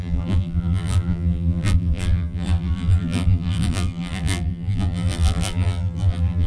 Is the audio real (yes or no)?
no